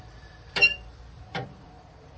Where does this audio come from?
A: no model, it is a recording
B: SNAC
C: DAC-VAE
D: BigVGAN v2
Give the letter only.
D